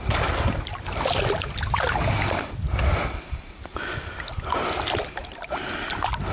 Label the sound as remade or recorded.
recorded